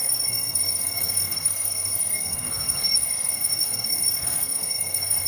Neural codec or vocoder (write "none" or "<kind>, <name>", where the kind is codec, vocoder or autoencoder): codec, SNAC